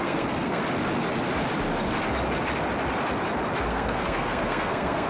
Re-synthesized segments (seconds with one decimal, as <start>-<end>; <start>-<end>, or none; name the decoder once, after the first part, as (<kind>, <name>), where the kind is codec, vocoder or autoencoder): 0.0-0.6 (codec, SNAC); 3.7-5.1